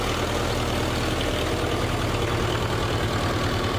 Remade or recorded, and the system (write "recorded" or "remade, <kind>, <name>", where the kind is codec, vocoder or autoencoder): recorded